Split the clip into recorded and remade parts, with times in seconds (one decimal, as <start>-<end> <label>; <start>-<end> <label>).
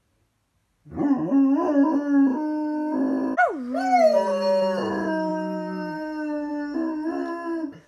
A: 0.0-7.9 recorded